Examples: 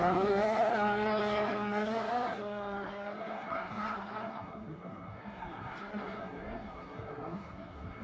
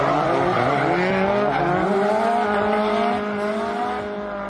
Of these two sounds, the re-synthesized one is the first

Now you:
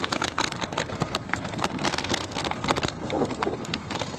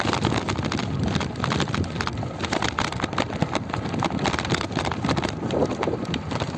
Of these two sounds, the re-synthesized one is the first